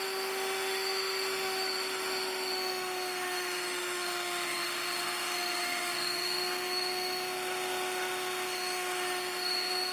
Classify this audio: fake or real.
fake